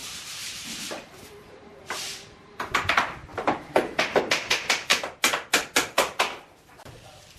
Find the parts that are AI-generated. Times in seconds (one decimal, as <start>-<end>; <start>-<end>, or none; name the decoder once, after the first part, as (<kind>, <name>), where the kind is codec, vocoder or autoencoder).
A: 0.0-2.9 (vocoder, BigVGAN v2)